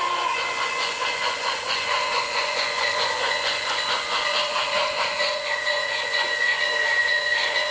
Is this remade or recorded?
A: remade